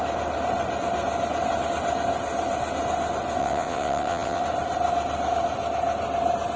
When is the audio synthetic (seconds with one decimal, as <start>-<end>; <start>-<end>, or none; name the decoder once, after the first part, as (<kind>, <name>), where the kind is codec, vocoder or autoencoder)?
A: 3.4-4.4 (vocoder, WaveNeXt)